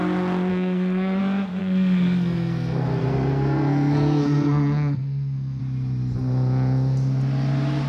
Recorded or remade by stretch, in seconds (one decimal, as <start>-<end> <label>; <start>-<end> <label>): 0.0-0.5 recorded; 0.5-1.2 remade; 1.2-1.6 recorded; 1.6-5.6 remade; 5.6-7.9 recorded